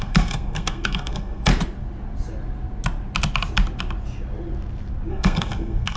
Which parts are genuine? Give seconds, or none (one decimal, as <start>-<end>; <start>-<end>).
1.5-5.1